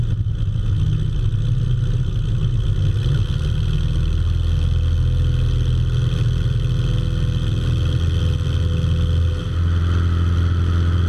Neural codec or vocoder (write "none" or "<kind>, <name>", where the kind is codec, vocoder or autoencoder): none